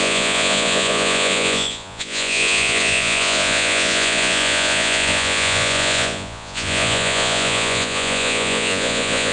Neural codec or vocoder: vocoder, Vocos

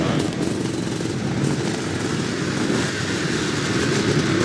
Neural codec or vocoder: none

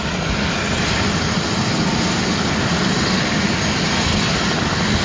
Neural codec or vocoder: none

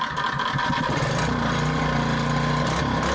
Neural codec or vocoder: none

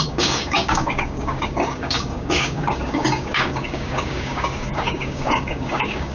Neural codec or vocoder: codec, DAC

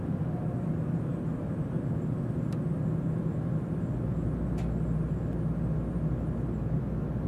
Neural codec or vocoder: none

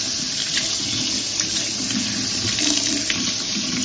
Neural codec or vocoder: none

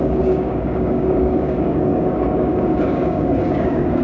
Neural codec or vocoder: codec, DAC